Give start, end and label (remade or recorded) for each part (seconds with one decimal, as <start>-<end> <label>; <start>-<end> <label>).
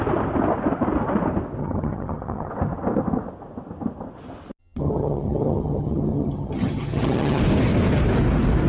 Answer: 0.0-1.6 recorded; 1.6-2.5 remade; 2.5-4.6 recorded; 4.6-7.4 remade; 7.4-8.7 recorded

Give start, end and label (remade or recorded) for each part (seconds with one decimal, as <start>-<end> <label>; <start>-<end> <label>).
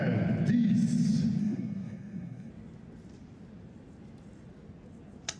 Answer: 0.0-1.4 recorded; 1.4-2.5 remade; 2.5-5.4 recorded